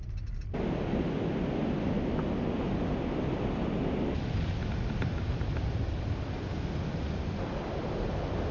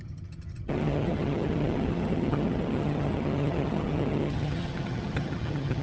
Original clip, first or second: first